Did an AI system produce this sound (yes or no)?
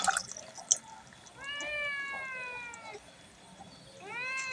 no